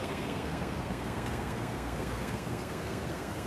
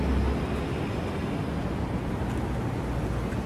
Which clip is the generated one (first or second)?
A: first